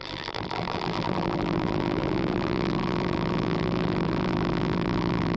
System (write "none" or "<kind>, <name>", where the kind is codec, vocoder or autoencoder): vocoder, BigVGAN v2